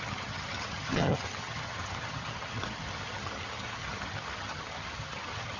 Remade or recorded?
remade